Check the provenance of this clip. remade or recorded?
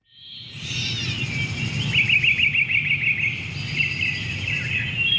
recorded